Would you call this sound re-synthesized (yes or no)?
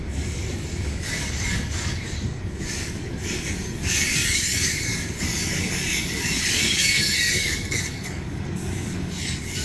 yes